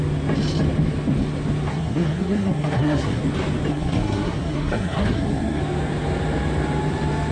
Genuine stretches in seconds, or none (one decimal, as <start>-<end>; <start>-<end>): 0.0-1.7; 3.2-3.7; 5.6-7.3